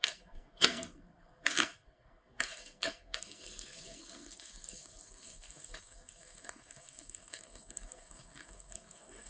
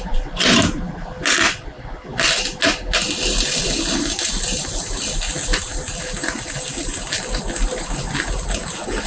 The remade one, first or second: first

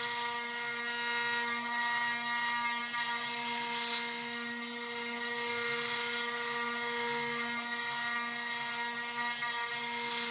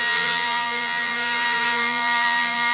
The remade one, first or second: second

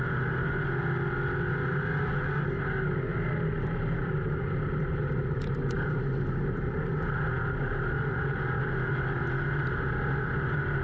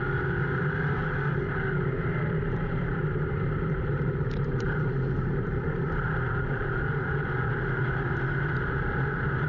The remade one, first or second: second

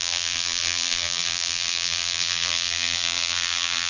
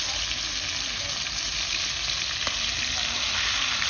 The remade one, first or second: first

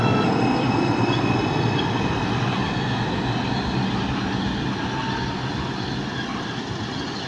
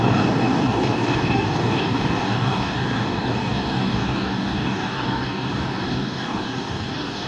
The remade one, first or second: second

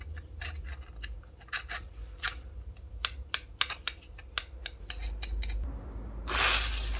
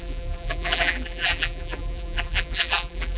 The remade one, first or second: second